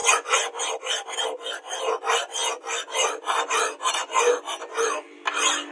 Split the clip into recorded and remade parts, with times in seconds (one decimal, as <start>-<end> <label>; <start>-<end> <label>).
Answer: 0.0-0.6 remade; 0.6-5.7 recorded